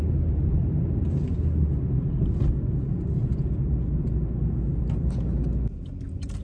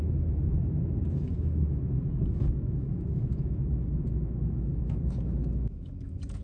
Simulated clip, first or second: second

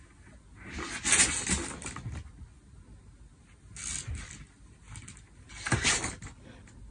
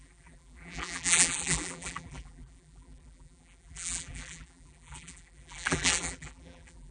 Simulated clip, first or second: second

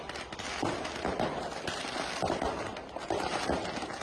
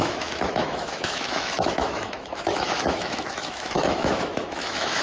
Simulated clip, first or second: second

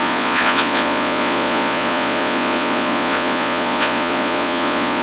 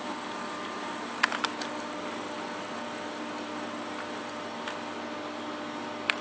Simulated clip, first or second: first